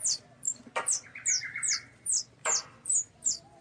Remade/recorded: remade